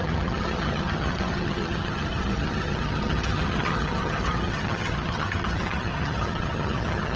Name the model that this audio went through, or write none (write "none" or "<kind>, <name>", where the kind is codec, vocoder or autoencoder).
vocoder, HiFi-GAN